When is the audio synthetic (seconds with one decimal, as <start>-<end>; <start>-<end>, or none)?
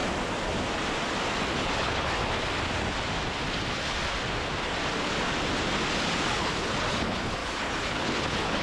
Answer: 1.5-2.2; 6.2-8.6